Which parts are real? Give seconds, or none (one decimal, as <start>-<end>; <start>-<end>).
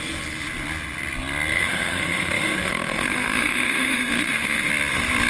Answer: 0.0-1.5; 4.7-5.3